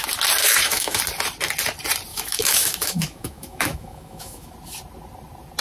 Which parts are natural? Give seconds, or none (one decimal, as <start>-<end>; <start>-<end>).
0.0-0.4; 1.0-2.1; 4.5-5.6